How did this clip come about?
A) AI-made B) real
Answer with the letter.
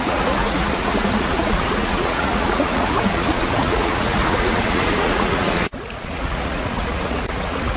A